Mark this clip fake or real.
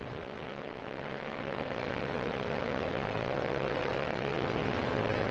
fake